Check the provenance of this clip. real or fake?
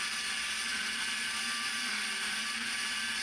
fake